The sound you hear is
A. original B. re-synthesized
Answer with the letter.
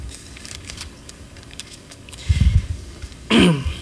B